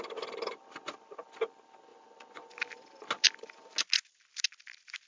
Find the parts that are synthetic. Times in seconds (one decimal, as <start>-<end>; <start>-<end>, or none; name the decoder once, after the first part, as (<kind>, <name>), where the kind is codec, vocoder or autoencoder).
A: 1.9-2.5 (vocoder, Vocos)